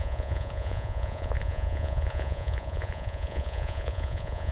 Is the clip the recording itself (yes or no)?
no